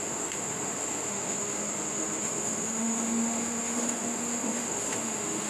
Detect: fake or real fake